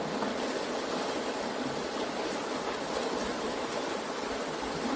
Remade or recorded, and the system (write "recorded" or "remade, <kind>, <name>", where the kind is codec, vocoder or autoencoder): recorded